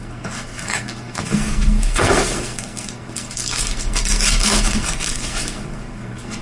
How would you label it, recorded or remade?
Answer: remade